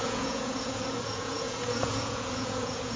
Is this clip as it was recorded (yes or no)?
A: no